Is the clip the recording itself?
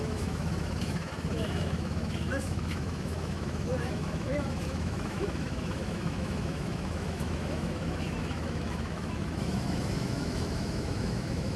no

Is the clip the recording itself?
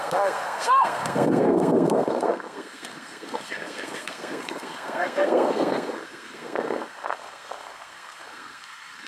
no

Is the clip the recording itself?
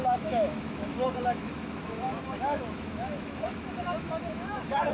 no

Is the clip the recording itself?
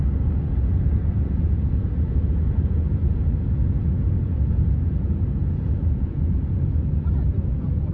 no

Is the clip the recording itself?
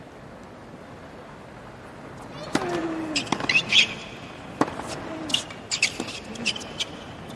yes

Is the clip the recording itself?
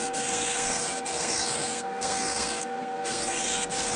no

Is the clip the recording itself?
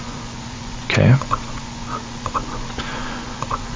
no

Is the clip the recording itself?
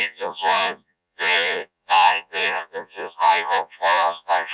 no